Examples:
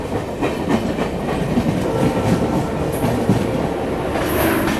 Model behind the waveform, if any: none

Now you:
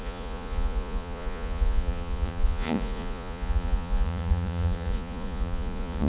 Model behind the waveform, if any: vocoder, Vocos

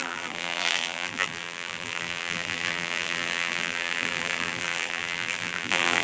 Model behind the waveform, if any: vocoder, BigVGAN v2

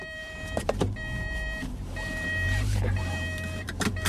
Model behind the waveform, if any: vocoder, BigVGAN v2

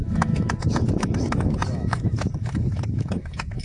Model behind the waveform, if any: autoencoder, DAC-VAE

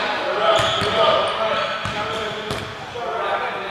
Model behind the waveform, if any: none